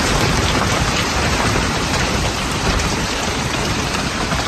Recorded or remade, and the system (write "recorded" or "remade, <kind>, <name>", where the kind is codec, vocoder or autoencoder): remade, vocoder, BigVGAN v2